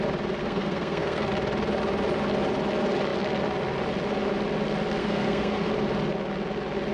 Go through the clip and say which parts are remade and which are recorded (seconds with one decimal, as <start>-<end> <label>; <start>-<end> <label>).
0.0-0.4 recorded; 0.4-1.3 remade; 1.3-5.0 recorded; 5.0-5.7 remade; 5.7-6.9 recorded